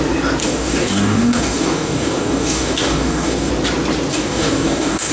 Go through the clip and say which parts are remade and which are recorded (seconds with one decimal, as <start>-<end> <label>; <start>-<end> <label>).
0.0-0.4 recorded; 0.4-3.5 remade; 3.5-4.1 recorded; 4.1-5.1 remade